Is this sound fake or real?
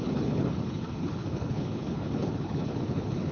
fake